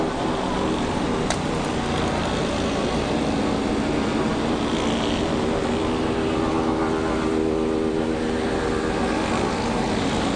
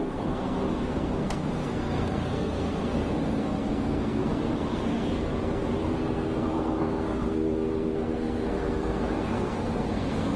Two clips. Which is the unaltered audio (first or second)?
first